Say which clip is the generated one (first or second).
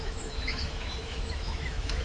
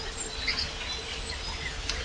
first